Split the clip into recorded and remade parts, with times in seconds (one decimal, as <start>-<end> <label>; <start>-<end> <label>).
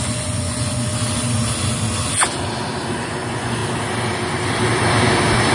0.0-0.9 remade; 0.9-3.0 recorded; 3.0-3.6 remade; 3.6-5.5 recorded